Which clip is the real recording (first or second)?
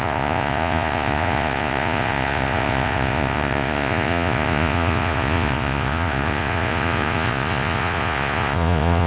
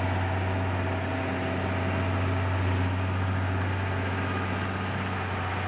second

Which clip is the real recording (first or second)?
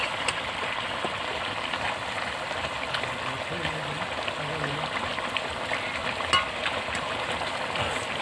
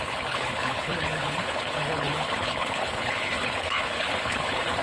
first